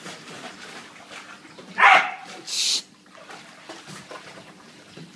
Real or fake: real